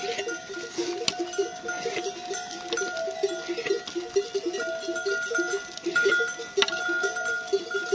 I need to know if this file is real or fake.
real